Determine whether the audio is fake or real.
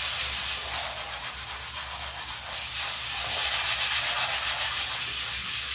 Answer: real